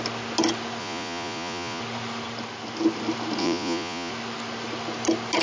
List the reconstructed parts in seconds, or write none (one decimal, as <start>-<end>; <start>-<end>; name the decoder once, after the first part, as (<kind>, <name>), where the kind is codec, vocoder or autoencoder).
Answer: 0.8-1.8 (vocoder, Vocos); 3.4-4.1